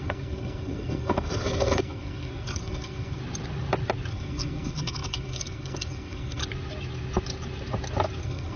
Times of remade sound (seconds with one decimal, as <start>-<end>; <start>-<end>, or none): 0.0-3.2; 4.1-6.4; 8.2-8.6